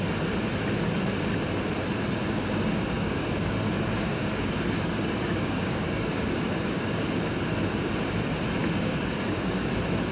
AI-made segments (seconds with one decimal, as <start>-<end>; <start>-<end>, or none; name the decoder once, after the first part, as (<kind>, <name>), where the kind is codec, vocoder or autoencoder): 2.2-7.3 (codec, DAC); 8.6-9.7